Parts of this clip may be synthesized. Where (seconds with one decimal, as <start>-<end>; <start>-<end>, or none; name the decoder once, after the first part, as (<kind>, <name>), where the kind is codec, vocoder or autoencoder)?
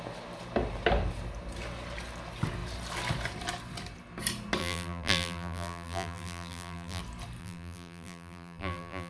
4.6-7.0 (vocoder, BigVGAN v2); 7.4-9.1